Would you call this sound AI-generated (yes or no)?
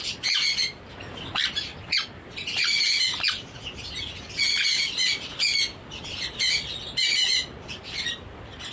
no